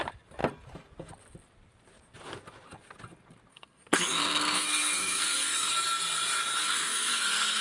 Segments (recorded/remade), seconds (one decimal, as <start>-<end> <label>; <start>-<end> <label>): 0.0-3.5 recorded; 3.5-5.7 remade; 5.7-6.6 recorded; 6.6-7.6 remade